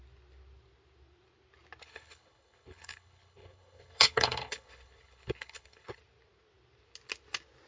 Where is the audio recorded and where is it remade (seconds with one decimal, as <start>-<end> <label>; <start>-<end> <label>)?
0.0-1.8 recorded; 1.8-6.0 remade; 6.0-7.7 recorded